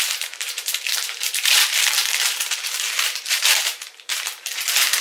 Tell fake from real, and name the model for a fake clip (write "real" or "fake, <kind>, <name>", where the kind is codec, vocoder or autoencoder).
fake, vocoder, BigVGAN v2